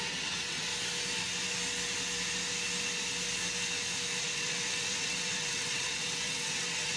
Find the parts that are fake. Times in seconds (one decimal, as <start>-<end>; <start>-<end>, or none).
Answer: 0.0-0.7; 4.2-7.0